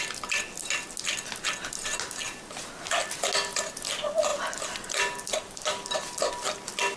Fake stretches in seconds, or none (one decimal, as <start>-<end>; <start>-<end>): none